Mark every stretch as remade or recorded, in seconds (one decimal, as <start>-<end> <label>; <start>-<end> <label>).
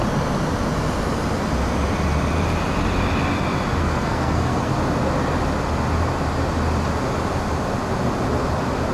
0.0-3.8 recorded; 3.8-4.7 remade; 4.7-8.9 recorded